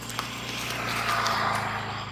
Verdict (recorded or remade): recorded